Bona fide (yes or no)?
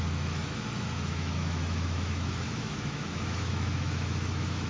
no